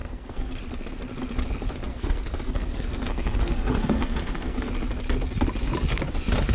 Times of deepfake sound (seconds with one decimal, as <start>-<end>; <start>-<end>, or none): 0.0-0.5; 1.9-4.7